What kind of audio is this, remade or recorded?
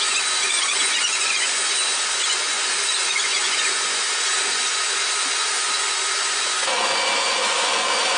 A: remade